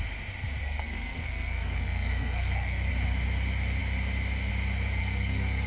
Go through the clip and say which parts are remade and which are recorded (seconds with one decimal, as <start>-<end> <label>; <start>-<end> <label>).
0.0-0.6 recorded; 0.6-2.9 remade; 2.9-5.0 recorded; 5.0-5.7 remade